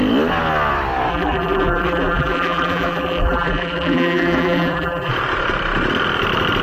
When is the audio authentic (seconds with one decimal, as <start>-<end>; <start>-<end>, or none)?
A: 0.0-1.1; 5.1-6.6